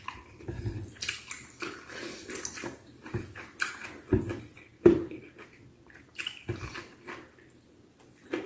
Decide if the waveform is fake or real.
real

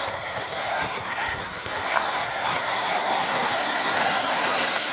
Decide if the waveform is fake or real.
fake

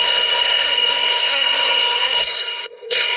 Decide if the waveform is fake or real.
fake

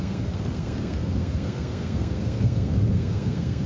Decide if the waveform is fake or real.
fake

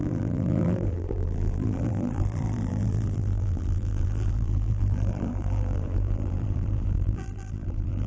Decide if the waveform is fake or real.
fake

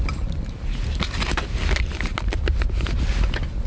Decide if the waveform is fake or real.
real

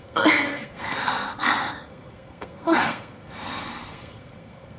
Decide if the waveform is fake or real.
fake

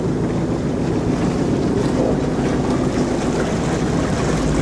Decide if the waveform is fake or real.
real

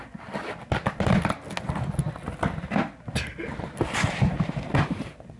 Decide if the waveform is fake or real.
real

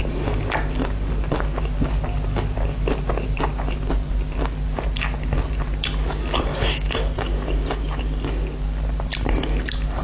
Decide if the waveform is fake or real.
real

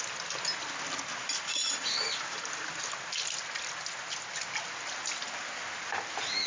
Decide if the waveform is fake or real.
real